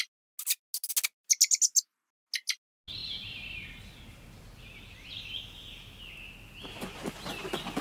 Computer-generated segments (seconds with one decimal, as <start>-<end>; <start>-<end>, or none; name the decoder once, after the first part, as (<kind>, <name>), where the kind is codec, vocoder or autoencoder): none